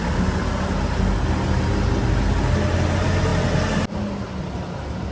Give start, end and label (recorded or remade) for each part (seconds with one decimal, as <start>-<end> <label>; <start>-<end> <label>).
0.0-5.1 recorded